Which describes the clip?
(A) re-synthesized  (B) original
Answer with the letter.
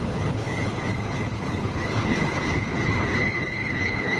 A